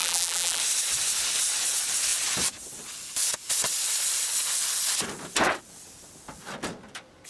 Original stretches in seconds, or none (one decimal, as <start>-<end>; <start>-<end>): 0.6-7.3